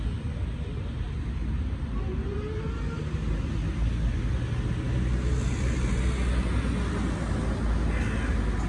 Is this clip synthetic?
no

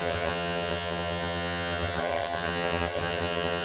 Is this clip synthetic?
yes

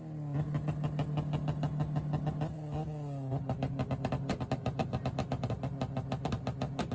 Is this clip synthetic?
no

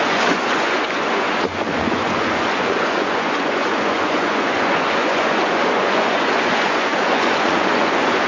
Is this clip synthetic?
yes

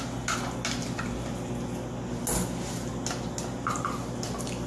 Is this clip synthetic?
no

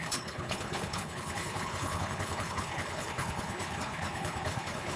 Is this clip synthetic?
yes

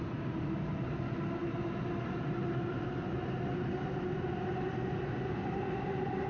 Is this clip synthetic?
no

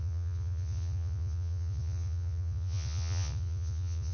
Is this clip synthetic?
yes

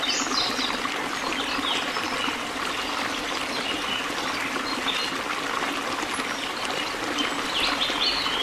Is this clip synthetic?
no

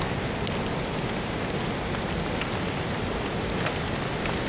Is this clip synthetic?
no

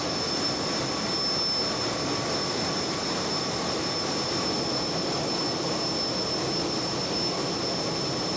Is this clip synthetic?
no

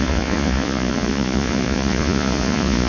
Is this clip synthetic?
yes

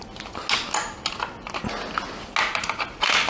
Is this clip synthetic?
no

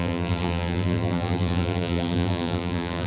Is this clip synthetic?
yes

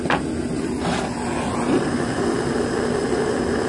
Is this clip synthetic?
no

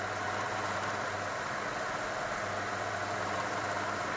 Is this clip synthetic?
no